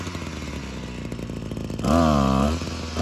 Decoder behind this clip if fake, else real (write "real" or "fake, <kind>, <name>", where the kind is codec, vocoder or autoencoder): real